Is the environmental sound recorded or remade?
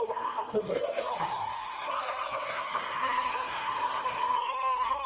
remade